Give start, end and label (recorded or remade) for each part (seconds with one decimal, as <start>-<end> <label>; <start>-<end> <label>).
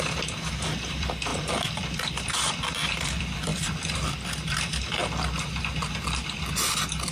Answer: 0.0-5.0 remade; 5.0-5.6 recorded; 5.6-7.1 remade